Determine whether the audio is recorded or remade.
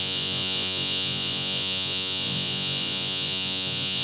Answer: remade